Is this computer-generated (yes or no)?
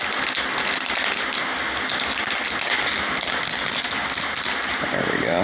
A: no